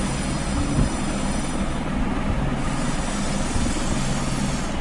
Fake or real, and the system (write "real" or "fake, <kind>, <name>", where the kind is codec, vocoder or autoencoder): real